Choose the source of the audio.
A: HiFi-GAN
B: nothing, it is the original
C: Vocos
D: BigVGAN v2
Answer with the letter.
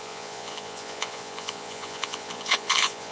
C